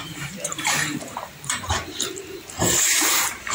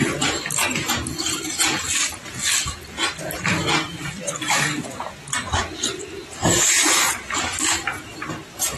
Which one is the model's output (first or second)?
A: first